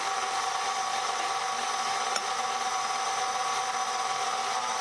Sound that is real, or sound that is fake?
real